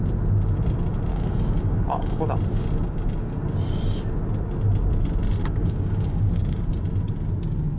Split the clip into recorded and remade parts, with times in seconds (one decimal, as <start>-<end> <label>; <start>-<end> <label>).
0.0-1.1 recorded; 1.1-2.2 remade; 2.2-5.4 recorded; 5.4-6.6 remade; 6.6-7.8 recorded